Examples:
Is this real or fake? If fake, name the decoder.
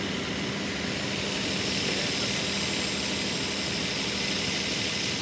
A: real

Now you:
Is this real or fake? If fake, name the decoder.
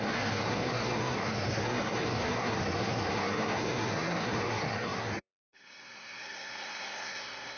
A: fake, codec, SNAC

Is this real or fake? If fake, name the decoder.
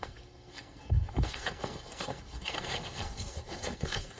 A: fake, codec, SNAC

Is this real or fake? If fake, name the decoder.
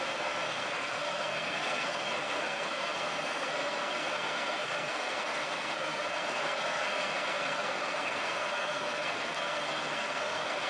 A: fake, codec, SNAC